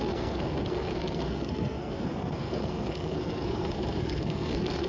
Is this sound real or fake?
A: fake